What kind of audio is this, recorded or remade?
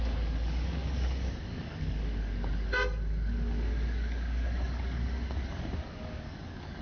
remade